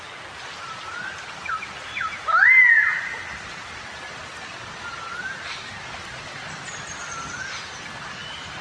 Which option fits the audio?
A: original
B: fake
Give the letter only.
A